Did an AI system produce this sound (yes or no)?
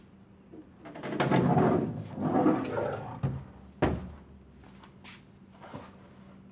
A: no